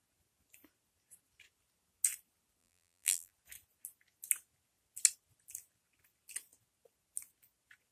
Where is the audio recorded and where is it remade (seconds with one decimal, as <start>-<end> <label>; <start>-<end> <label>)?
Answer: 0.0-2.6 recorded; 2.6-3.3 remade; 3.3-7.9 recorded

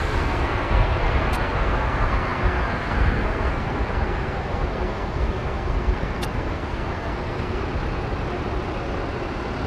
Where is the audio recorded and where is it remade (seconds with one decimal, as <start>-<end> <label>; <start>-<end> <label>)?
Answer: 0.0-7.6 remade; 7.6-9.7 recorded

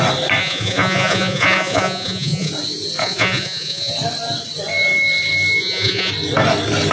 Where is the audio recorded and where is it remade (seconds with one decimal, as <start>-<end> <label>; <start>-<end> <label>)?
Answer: 0.0-0.4 recorded; 0.4-2.5 remade; 2.5-3.0 recorded; 3.0-3.9 remade; 3.9-5.6 recorded; 5.6-6.1 remade; 6.1-6.9 recorded

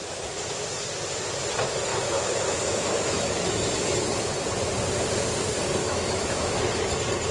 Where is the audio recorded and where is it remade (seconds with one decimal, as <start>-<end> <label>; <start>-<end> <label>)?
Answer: 0.0-0.6 remade; 0.6-1.9 recorded; 1.9-4.3 remade; 4.3-5.8 recorded; 5.8-6.6 remade; 6.6-7.3 recorded

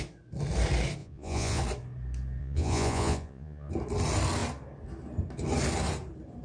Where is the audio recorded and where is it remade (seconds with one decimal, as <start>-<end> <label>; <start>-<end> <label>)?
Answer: 0.0-1.0 recorded; 1.0-1.6 remade; 1.6-2.4 recorded; 2.4-3.7 remade; 3.7-6.4 recorded

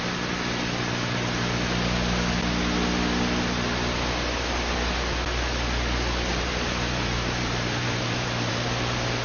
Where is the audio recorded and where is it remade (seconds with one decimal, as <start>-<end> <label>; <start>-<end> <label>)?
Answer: 0.0-6.3 recorded; 6.3-8.5 remade; 8.5-9.2 recorded

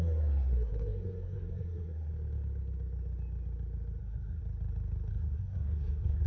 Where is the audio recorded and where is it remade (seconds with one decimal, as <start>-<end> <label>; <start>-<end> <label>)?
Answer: 0.0-2.1 remade; 2.1-4.0 recorded; 4.0-4.4 remade; 4.4-5.1 recorded; 5.1-6.3 remade